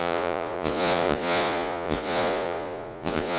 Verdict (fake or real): fake